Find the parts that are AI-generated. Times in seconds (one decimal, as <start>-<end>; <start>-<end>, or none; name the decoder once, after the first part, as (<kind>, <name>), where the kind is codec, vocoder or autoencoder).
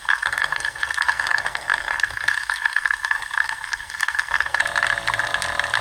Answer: 0.0-4.6 (codec, SNAC)